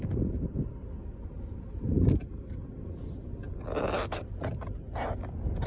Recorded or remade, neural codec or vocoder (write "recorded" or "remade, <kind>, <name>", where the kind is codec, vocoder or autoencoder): recorded